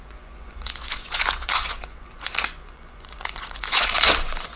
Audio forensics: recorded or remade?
remade